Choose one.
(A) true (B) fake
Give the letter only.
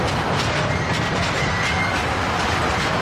A